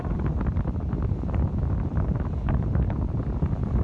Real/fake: real